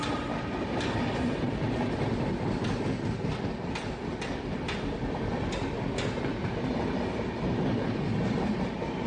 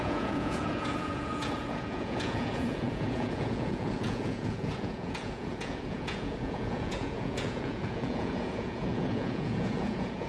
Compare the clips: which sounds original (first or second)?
first